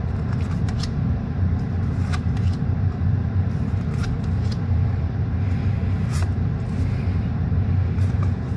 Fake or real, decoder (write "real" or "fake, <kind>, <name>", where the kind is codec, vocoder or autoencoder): fake, vocoder, BigVGAN v2